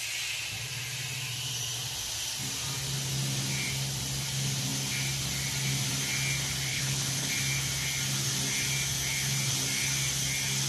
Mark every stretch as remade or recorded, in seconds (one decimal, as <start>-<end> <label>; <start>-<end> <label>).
0.0-6.7 recorded; 6.7-7.3 remade; 7.3-10.7 recorded